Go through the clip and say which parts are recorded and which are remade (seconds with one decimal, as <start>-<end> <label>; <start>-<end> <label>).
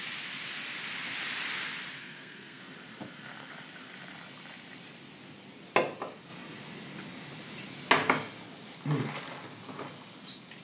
0.0-2.0 recorded; 2.0-2.6 remade; 2.6-10.6 recorded